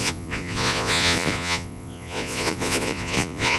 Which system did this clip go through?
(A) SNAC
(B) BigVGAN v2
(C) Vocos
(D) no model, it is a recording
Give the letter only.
C